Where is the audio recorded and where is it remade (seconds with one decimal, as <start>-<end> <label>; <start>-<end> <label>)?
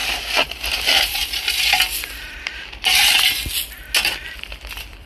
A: 0.0-0.7 recorded; 0.7-1.2 remade; 1.2-4.3 recorded; 4.3-5.1 remade